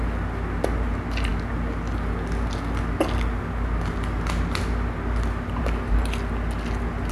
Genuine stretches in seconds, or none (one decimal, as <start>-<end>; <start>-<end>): 0.0-7.1